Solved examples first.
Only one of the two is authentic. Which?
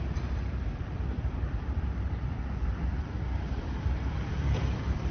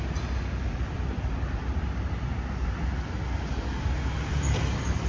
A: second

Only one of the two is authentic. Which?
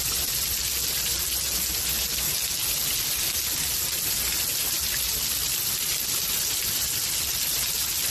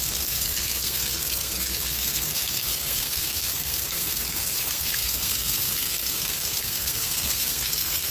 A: first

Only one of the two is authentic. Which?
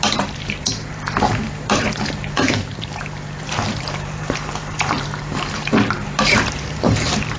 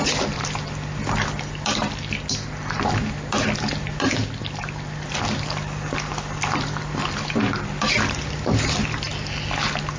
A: second